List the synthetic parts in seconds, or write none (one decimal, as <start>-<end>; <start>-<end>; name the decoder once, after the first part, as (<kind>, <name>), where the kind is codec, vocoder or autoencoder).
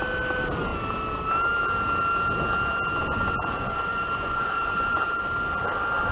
3.0-5.2 (vocoder, Vocos)